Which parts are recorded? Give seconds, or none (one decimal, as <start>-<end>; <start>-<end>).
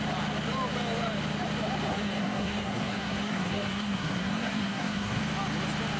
0.0-1.9; 5.2-6.0